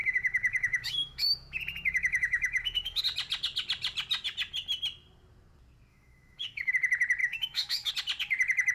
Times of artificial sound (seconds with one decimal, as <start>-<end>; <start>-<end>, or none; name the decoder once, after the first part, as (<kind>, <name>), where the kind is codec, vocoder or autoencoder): 0.0-3.0 (autoencoder, DAC-VAE); 5.9-6.7; 7.2-7.9